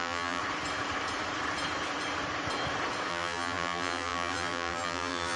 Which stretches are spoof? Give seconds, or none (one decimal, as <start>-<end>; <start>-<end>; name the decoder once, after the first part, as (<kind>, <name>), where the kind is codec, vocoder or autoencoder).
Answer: 0.0-0.4 (vocoder, BigVGAN v2); 3.1-5.4